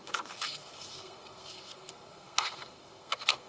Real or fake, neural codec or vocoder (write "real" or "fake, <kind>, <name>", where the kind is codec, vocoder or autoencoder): fake, codec, SNAC